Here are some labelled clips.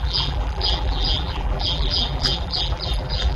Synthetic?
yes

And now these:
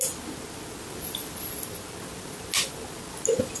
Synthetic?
no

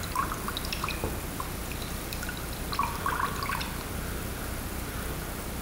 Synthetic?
no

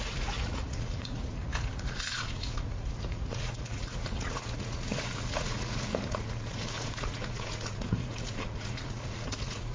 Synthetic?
yes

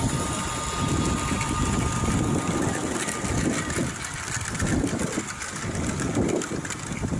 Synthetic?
no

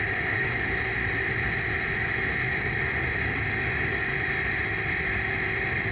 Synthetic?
no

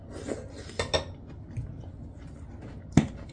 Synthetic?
no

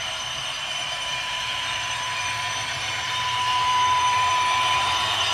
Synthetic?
yes